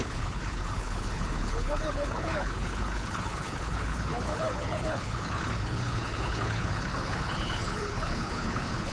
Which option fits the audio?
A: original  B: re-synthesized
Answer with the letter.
B